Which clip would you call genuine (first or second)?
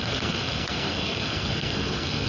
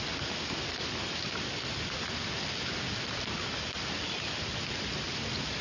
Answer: second